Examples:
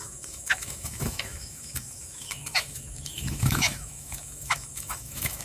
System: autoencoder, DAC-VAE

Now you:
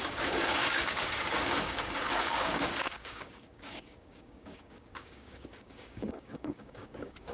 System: codec, DAC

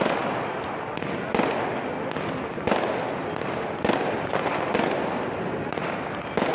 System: none